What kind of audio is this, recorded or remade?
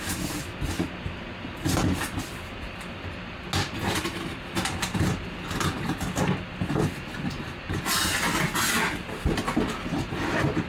recorded